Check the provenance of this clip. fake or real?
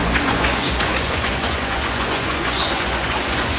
fake